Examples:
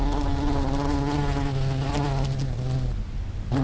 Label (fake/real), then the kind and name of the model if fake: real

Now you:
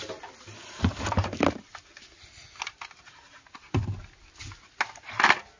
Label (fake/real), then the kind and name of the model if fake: real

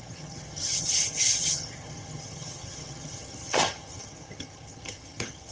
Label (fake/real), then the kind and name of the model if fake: fake, vocoder, HiFi-GAN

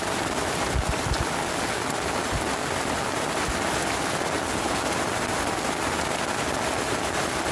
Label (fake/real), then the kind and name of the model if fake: real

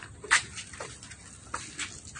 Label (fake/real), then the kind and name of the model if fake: real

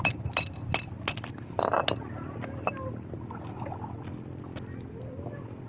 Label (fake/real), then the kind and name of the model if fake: real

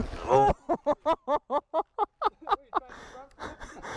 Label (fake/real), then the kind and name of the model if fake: real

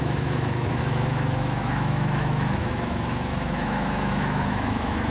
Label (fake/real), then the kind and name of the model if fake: fake, autoencoder, DAC-VAE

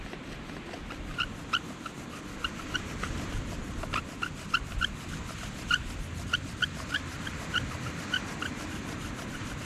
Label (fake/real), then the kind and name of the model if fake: real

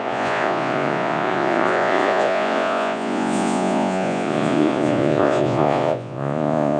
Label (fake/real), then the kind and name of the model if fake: fake, vocoder, Vocos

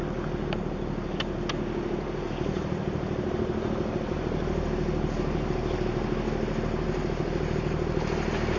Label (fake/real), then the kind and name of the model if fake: real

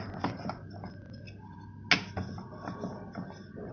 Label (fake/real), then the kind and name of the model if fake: real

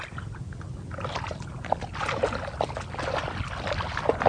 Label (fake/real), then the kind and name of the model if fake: real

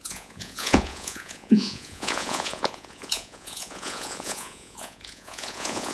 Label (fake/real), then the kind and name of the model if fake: fake, vocoder, Vocos